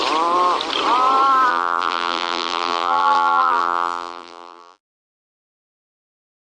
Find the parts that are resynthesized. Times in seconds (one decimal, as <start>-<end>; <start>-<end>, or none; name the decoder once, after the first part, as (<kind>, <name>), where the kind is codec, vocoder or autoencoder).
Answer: 1.5-5.4 (vocoder, BigVGAN v2)